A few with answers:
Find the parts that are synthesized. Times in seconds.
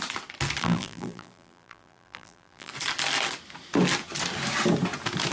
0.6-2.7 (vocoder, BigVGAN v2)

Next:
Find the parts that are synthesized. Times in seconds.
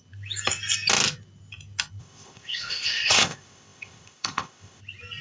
2.0-4.8 (codec, ZipCodec)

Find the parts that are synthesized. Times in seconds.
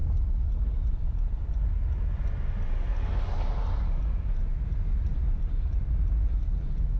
0.9-1.7 (vocoder, BigVGAN v2); 5.7-7.0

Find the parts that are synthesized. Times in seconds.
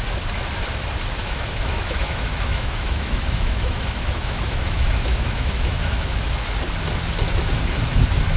1.2-6.2 (autoencoder, DAC-VAE)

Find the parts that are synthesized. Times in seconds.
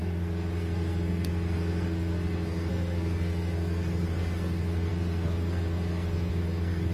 0.0-6.9 (codec, SNAC)